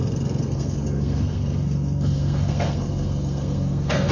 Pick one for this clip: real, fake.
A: fake